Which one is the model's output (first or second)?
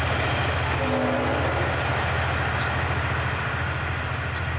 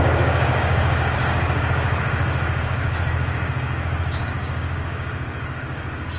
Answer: second